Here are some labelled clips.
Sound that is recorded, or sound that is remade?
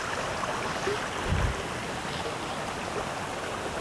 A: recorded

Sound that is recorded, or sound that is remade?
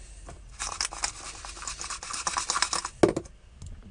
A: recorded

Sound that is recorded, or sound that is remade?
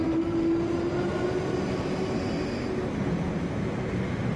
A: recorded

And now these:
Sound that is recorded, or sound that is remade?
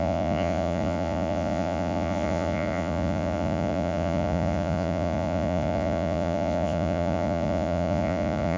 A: remade